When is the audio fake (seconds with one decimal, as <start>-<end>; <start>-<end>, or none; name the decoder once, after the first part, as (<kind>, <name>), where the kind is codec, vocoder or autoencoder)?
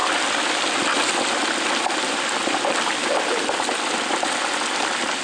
2.1-5.2 (vocoder, BigVGAN v2)